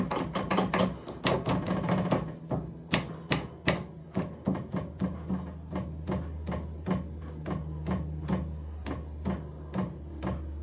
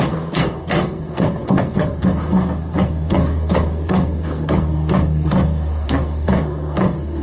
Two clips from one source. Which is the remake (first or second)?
second